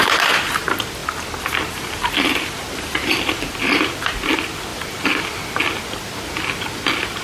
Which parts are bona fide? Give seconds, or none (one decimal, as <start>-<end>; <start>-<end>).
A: 0.0-7.2